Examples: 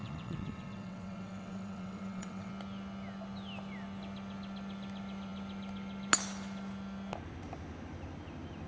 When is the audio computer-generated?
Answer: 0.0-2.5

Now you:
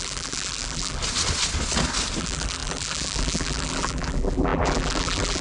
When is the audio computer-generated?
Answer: 0.0-1.0; 2.2-5.4

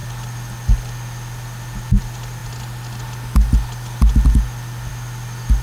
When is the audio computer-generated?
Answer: none

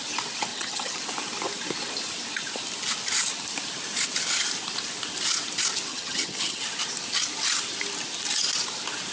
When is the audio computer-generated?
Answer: 0.5-1.0; 5.9-6.6

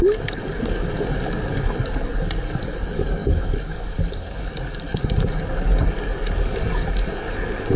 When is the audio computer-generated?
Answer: 0.0-7.8